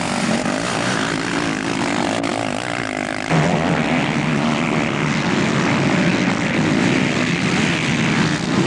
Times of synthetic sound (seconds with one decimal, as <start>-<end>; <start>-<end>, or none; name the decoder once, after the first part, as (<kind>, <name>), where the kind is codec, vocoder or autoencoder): none